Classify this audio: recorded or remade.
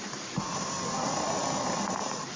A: remade